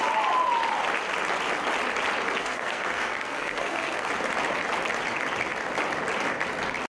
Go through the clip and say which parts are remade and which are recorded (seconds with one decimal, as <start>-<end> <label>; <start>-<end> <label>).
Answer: 0.0-2.4 recorded; 2.4-4.1 remade; 4.1-6.9 recorded